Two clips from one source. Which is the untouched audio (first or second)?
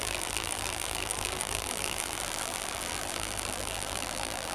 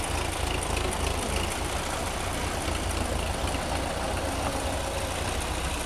second